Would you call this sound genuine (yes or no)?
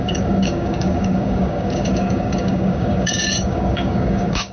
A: no